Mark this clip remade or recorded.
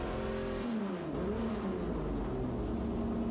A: recorded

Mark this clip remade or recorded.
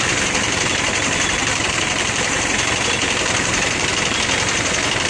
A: remade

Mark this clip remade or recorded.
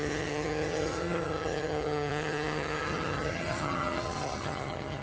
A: remade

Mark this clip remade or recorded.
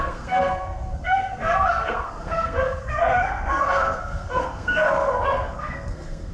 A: remade